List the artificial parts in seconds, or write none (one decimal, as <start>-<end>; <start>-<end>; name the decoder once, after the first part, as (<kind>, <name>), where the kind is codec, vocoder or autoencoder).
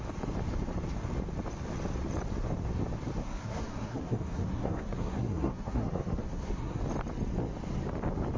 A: 3.2-6.8 (codec, SNAC)